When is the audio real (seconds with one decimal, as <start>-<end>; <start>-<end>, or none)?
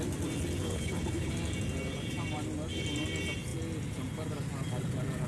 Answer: 0.0-0.6; 1.3-5.3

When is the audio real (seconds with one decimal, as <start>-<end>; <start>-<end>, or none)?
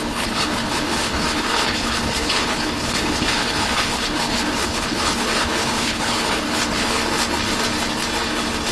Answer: 7.0-8.7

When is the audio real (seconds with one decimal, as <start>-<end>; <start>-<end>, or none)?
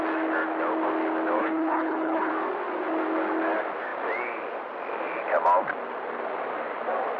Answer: 0.0-1.4; 2.3-7.2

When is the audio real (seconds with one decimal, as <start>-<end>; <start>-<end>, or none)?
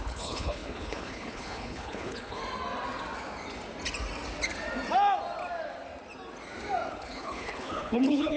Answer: 2.4-6.9